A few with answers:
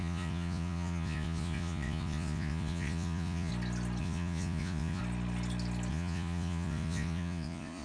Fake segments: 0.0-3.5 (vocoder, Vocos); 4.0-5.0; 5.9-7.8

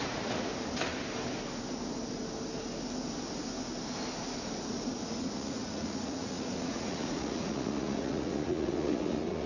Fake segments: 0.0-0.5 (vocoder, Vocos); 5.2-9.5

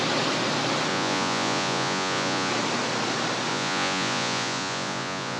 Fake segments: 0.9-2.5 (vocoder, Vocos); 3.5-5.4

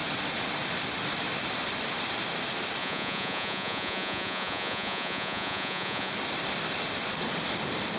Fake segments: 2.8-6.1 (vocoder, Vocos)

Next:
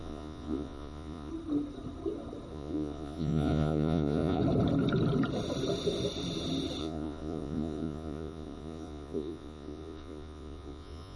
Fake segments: 0.0-1.3 (vocoder, Vocos); 2.5-4.4; 6.8-11.2

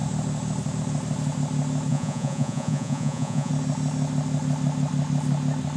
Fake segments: 1.9-3.5 (vocoder, Vocos)